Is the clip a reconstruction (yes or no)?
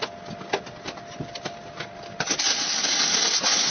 no